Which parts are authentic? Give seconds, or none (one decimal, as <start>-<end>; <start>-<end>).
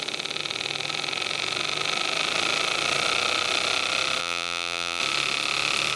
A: 0.0-4.2; 5.0-6.0